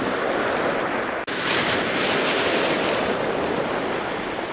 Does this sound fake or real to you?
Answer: real